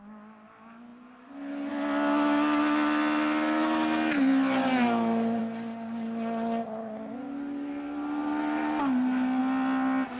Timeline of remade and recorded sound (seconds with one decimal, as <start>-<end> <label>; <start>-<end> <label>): 0.0-10.2 recorded